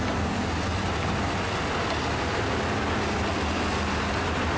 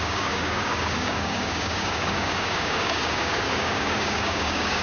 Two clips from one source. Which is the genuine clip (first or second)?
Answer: first